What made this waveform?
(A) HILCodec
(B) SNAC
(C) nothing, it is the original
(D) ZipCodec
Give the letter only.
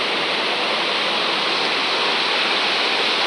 C